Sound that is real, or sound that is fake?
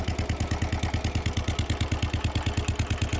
real